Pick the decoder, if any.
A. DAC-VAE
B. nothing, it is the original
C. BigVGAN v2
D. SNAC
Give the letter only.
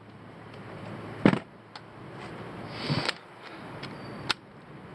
B